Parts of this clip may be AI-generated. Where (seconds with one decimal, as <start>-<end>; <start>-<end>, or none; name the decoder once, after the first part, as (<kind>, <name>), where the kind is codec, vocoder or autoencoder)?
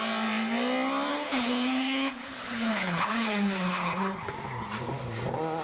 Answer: 1.1-4.3 (codec, HILCodec)